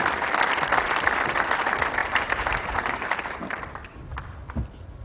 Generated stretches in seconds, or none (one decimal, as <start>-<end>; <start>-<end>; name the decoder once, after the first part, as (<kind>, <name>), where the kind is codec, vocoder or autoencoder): 2.0-3.5 (vocoder, BigVGAN v2)